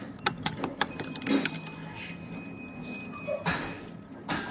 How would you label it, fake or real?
real